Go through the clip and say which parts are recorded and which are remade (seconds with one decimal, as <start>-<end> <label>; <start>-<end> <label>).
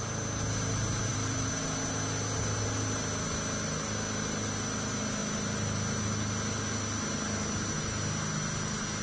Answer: 0.0-1.1 recorded; 1.1-1.6 remade; 1.6-9.0 recorded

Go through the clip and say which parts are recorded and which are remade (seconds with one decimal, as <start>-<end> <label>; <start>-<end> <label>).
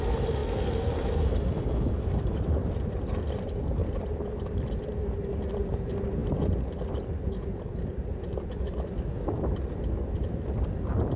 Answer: 0.0-3.8 recorded; 3.8-4.6 remade; 4.6-11.2 recorded